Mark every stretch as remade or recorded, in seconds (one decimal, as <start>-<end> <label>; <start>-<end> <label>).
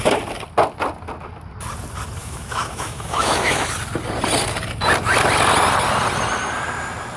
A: 0.0-2.2 recorded; 2.2-3.7 remade; 3.7-7.2 recorded